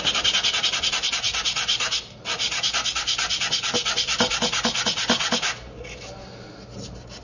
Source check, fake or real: real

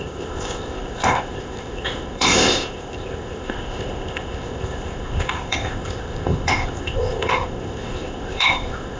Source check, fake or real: fake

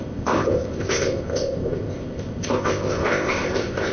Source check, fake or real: fake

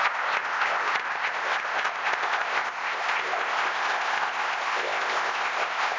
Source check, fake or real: fake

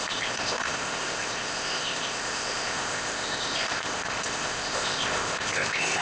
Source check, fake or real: fake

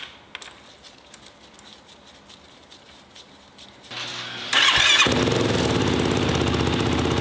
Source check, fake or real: real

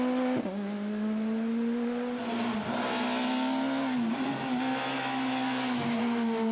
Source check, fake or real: real